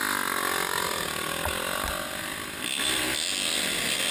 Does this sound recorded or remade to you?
recorded